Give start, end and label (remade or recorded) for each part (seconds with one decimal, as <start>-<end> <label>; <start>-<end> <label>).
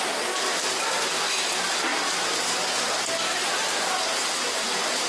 0.0-1.9 remade; 1.9-5.1 recorded